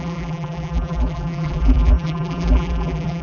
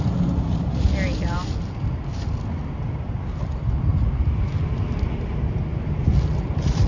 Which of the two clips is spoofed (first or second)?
first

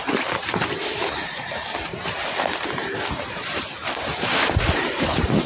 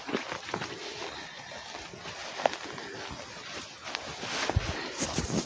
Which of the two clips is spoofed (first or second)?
first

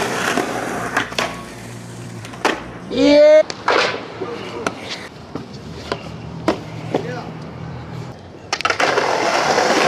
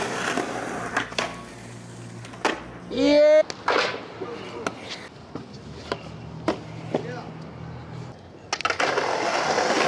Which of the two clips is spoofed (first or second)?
first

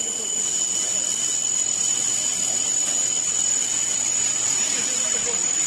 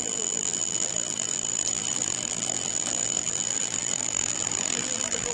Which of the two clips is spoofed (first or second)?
second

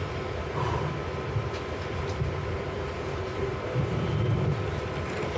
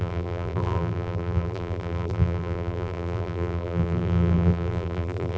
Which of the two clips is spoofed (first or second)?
second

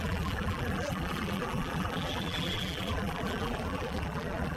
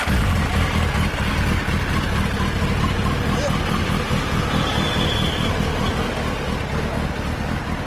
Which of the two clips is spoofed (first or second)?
first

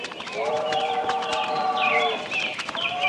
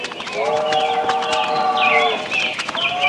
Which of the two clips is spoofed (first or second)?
first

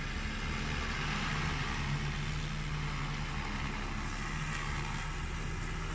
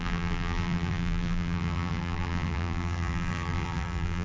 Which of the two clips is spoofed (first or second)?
second